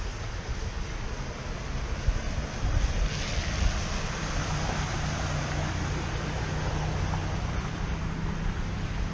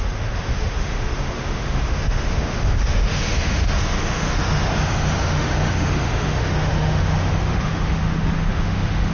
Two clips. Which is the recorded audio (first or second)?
first